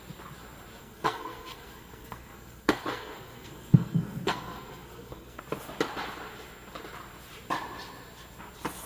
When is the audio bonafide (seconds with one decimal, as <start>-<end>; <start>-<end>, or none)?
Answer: 0.0-0.8; 5.4-8.9